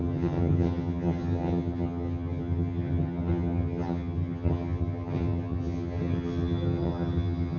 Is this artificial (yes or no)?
yes